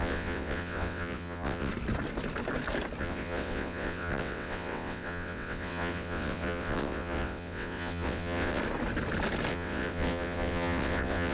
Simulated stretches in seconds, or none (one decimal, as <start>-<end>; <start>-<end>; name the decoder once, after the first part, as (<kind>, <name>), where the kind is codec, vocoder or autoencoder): 0.0-1.7 (vocoder, WaveNeXt); 3.0-8.6; 9.5-11.3